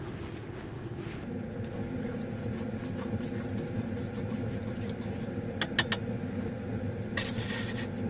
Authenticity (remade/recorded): recorded